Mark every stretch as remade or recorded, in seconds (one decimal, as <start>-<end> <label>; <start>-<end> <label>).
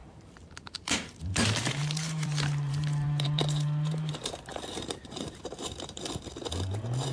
0.0-4.1 remade; 4.1-4.5 recorded; 4.5-6.0 remade; 6.0-7.1 recorded